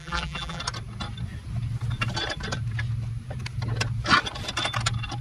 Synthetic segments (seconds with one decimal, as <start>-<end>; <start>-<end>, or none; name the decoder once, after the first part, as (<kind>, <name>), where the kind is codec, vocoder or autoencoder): 0.0-0.6 (vocoder, BigVGAN v2)